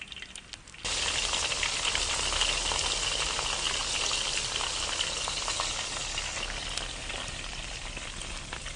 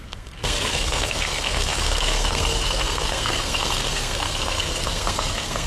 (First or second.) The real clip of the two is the first